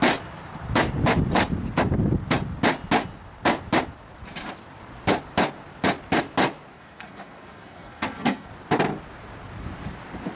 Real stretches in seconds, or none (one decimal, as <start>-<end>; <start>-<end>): 0.0-6.7; 8.5-10.4